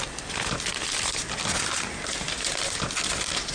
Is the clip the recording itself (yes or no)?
yes